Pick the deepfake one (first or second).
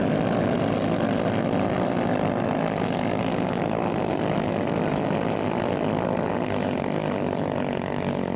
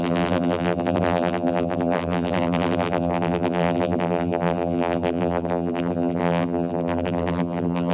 second